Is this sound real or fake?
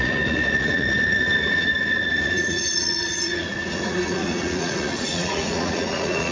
fake